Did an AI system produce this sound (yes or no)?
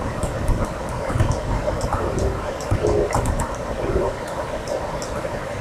yes